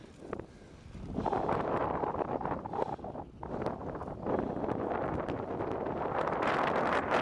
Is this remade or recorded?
recorded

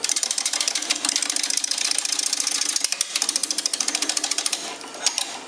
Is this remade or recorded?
recorded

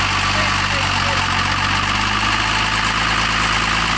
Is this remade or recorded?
recorded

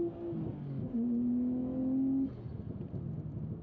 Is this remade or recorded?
recorded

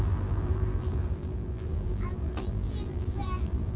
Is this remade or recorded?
remade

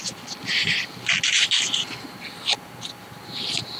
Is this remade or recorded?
recorded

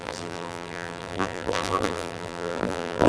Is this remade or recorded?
remade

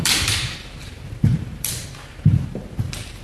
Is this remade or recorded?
remade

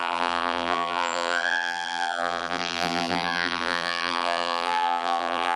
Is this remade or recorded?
remade